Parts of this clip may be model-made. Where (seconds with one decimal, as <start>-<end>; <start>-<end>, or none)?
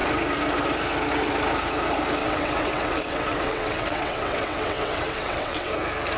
2.2-5.7